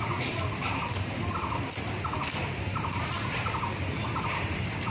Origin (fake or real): fake